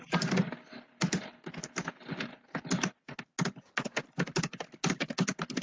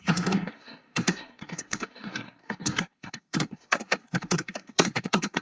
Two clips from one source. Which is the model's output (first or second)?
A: second